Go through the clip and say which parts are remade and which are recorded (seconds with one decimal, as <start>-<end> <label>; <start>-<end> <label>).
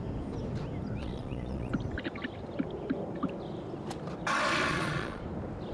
0.0-1.0 recorded; 1.0-1.7 remade; 1.7-4.7 recorded; 4.7-5.2 remade; 5.2-5.7 recorded